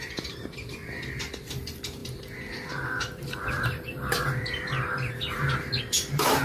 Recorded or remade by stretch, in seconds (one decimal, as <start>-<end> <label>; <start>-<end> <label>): 0.0-0.8 remade; 0.8-1.3 recorded; 1.3-6.4 remade